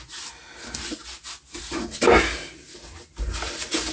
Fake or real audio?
real